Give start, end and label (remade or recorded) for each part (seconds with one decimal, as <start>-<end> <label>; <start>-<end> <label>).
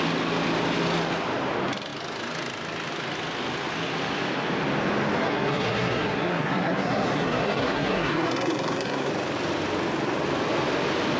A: 0.0-5.2 recorded; 5.2-9.1 remade; 9.1-11.2 recorded